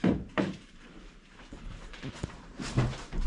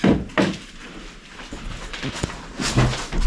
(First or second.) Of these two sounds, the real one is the second